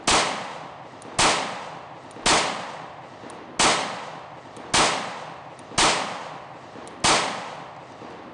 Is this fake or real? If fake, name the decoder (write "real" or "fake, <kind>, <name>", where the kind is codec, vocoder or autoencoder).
real